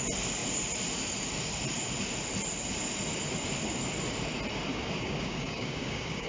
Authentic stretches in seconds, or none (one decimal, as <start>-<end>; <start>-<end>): 0.0-4.7